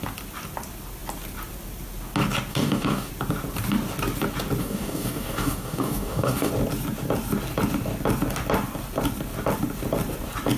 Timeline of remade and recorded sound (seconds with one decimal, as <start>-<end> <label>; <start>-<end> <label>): 0.0-2.5 recorded; 2.5-3.1 remade; 3.1-4.6 recorded; 4.6-6.5 remade; 6.5-10.6 recorded